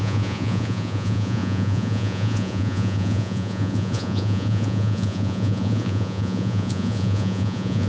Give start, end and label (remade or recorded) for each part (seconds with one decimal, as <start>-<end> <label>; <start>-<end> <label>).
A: 0.0-7.9 remade